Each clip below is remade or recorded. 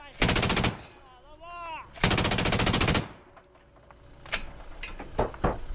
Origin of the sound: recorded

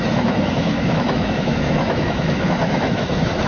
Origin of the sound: remade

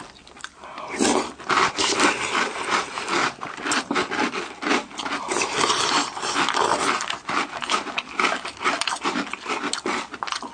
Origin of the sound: recorded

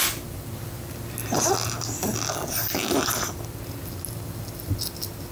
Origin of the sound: recorded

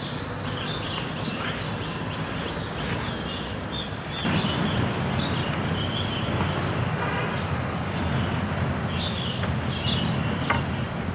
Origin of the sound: recorded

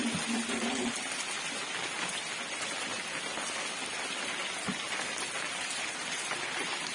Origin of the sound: recorded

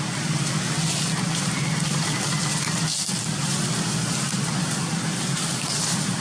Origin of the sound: recorded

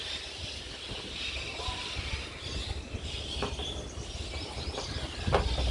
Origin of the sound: recorded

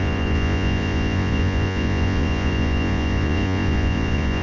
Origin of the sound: remade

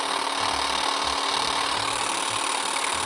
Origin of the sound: recorded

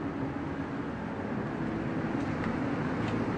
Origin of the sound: recorded